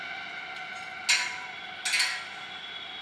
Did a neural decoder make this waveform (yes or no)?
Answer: no